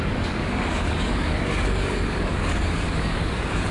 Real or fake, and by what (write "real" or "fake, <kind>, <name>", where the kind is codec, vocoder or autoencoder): fake, codec, DAC